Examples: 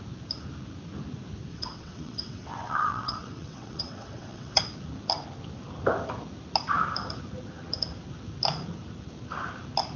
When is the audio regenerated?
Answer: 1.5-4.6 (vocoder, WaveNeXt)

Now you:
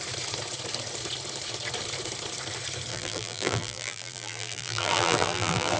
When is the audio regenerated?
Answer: 2.9-5.8 (vocoder, BigVGAN v2)

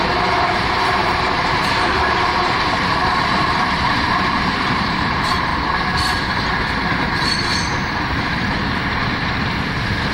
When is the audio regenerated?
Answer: 0.0-5.5 (vocoder, BigVGAN v2); 6.3-9.0; 9.5-10.1

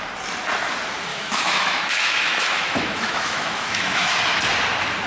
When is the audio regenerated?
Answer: 1.1-4.2 (autoencoder, DAC-VAE)